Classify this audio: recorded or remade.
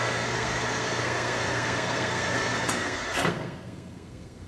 remade